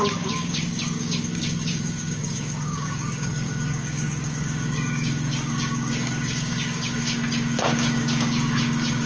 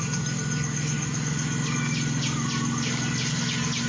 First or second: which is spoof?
first